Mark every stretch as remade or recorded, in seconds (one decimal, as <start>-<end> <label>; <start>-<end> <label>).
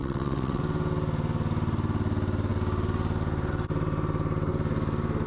0.0-0.6 remade; 0.6-5.3 recorded